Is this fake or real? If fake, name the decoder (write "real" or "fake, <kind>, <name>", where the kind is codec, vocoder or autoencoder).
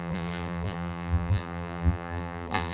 fake, vocoder, BigVGAN v2